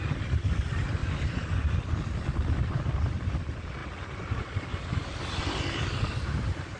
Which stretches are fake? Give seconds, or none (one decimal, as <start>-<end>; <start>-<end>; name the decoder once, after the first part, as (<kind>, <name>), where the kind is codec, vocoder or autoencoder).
none